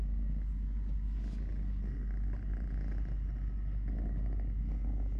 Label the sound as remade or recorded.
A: recorded